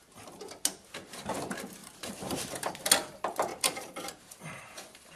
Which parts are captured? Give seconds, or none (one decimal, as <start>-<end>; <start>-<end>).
0.0-1.8; 2.7-3.5